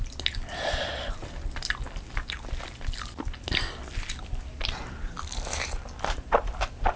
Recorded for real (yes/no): yes